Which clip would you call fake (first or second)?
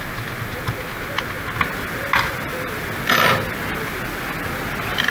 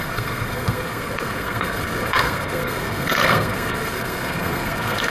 second